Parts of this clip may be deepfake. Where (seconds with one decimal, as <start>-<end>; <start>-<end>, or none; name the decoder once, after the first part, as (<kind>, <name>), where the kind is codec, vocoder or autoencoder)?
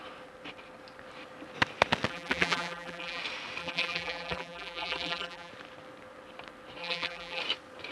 2.1-3.2 (vocoder, BigVGAN v2); 3.6-5.5; 6.8-7.4